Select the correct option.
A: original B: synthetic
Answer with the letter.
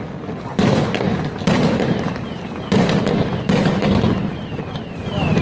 A